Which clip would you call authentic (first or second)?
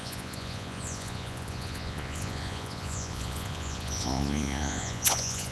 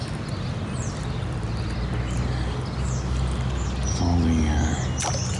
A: second